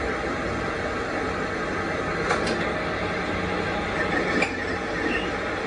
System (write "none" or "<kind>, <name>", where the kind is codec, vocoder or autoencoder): none